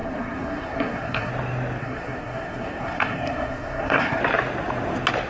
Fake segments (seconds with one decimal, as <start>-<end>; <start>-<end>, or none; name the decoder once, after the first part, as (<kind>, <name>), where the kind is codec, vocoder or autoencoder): 0.0-1.3 (codec, SNAC); 1.8-4.2